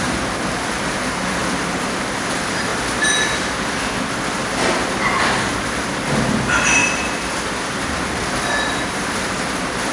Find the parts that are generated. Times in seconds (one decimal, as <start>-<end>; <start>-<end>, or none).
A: 6.8-7.9

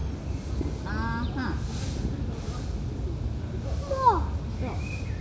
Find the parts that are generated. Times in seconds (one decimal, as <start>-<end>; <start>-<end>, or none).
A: none

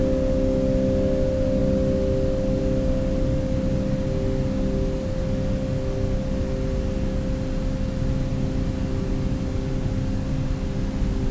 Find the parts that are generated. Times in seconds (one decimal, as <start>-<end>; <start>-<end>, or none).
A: none